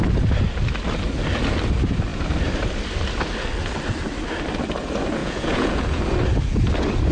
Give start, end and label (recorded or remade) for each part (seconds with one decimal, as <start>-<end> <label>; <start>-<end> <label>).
0.0-5.2 recorded; 5.2-6.0 remade; 6.0-7.1 recorded